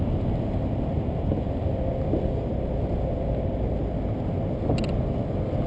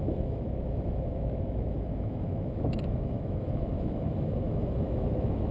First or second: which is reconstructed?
second